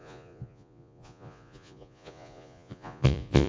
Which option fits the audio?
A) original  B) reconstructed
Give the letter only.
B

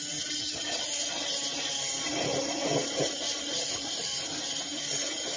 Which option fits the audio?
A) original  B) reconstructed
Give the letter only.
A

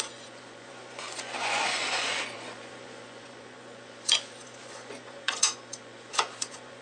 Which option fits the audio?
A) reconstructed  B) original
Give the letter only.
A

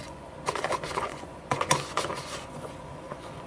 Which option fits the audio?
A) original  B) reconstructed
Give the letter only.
B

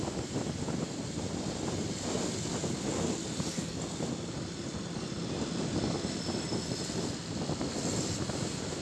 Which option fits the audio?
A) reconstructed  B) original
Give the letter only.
B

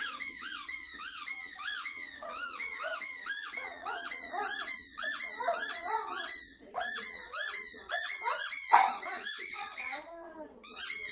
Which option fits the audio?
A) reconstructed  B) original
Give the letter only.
A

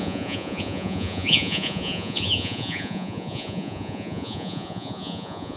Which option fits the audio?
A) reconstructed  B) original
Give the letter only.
A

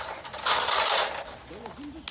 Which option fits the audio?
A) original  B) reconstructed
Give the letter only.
A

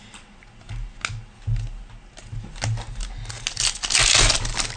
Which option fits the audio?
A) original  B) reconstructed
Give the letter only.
A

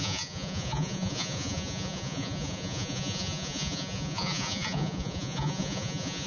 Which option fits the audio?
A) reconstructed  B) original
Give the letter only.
A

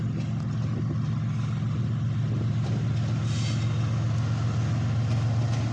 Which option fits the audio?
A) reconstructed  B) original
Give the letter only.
B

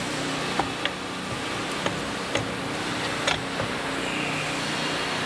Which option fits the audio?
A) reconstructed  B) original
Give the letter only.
B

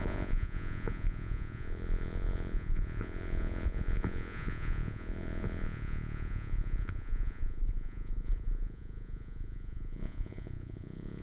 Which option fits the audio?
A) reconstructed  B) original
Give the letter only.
A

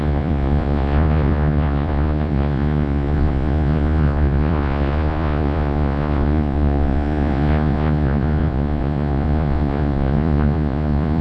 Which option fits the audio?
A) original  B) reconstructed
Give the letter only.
B